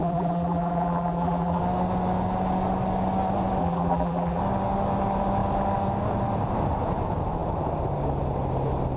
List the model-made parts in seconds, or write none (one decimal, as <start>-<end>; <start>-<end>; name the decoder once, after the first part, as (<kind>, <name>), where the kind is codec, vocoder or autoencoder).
0.0-1.6 (vocoder, BigVGAN v2); 3.6-4.4